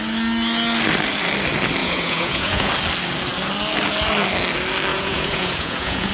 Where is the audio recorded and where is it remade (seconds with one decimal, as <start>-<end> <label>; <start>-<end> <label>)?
0.0-1.8 recorded; 1.8-2.7 remade; 2.7-4.9 recorded; 4.9-6.1 remade